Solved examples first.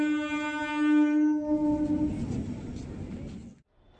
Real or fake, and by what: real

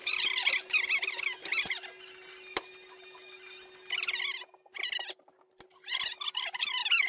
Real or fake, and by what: real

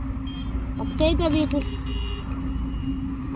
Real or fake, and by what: real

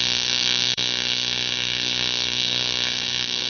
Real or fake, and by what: fake, codec, DAC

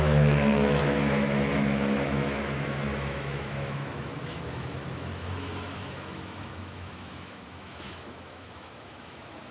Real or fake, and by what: fake, autoencoder, DAC-VAE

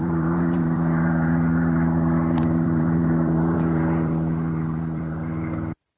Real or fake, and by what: fake, vocoder, BigVGAN v2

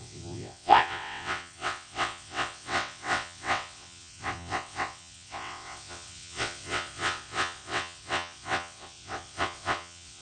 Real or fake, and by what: fake, vocoder, WaveNeXt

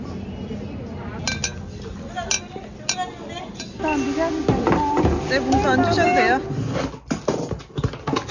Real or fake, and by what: real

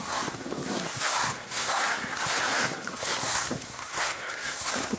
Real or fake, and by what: fake, codec, SNAC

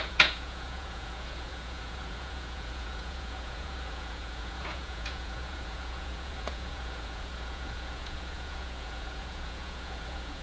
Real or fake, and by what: fake, vocoder, Vocos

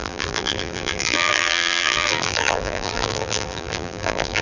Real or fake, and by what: fake, vocoder, BigVGAN v2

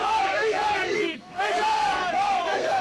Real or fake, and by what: fake, codec, SNAC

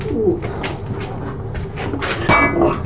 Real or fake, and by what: real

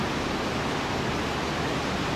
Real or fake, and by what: real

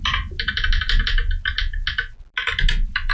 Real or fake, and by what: real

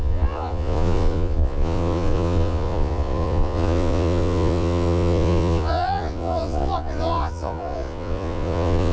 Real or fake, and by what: fake, vocoder, Vocos